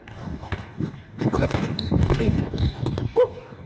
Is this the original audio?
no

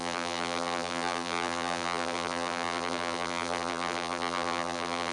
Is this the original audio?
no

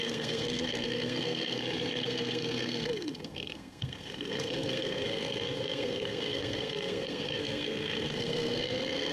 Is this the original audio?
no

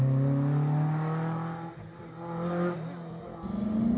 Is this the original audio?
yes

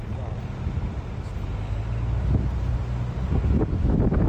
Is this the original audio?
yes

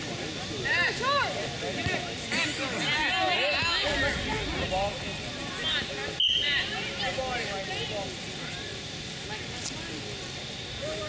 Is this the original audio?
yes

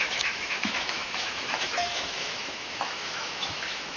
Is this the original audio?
no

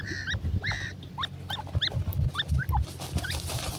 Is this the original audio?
yes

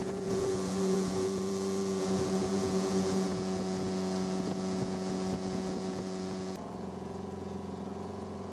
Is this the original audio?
no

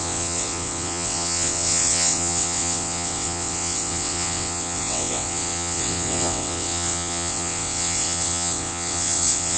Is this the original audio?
no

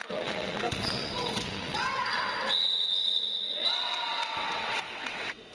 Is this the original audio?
no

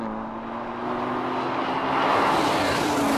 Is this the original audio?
yes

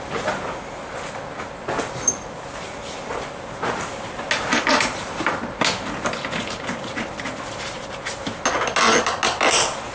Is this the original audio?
yes